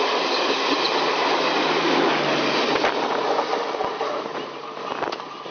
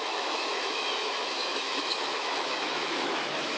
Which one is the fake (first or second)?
second